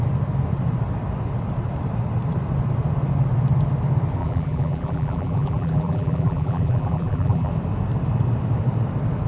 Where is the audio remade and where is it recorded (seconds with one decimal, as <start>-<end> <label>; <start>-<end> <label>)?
0.0-4.2 recorded; 4.2-7.5 remade; 7.5-9.3 recorded